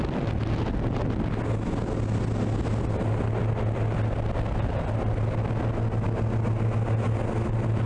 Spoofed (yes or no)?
no